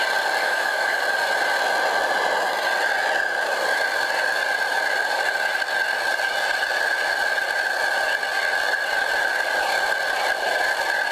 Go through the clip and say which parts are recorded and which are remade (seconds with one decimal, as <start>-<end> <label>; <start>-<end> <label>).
0.0-0.4 recorded; 0.4-1.0 remade; 1.0-11.1 recorded